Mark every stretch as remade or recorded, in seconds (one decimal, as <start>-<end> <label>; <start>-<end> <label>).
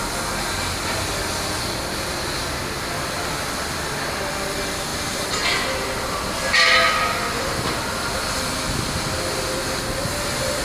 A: 0.0-10.6 recorded